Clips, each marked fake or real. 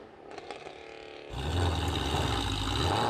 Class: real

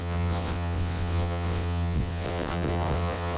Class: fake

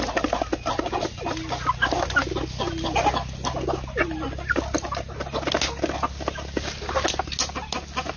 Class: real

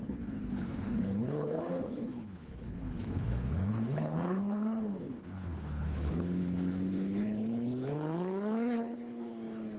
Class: fake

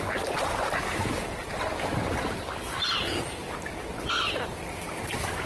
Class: real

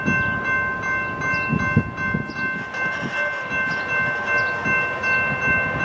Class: real